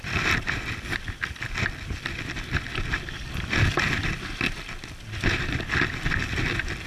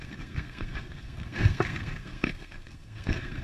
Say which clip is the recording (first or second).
first